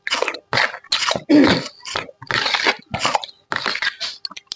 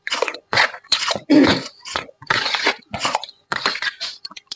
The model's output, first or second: second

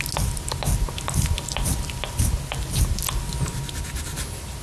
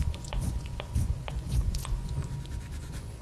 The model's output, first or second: second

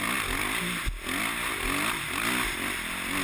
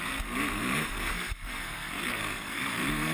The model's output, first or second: second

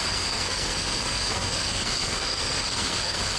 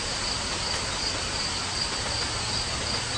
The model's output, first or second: first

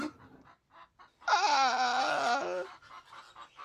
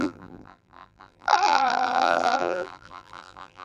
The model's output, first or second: second